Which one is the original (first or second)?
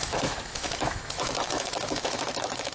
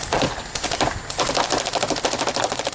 second